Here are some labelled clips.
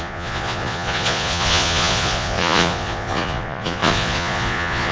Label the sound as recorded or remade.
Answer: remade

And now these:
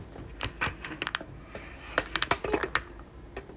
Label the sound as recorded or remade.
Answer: recorded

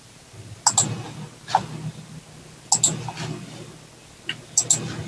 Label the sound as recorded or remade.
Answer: recorded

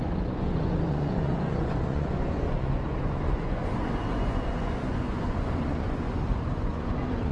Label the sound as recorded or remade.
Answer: remade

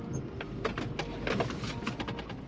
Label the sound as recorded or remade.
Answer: recorded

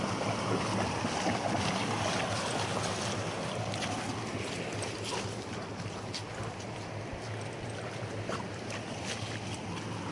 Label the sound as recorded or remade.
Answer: recorded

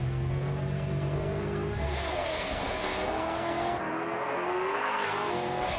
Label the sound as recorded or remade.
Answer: remade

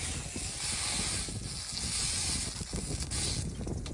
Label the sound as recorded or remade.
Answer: recorded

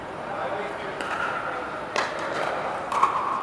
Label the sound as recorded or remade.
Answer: remade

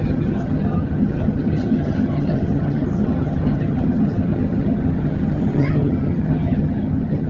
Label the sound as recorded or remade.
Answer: remade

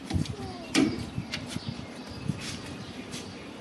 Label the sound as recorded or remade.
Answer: remade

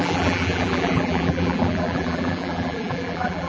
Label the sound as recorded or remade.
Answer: remade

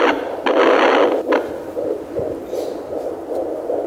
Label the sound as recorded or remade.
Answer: recorded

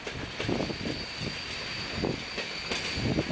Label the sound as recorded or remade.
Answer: recorded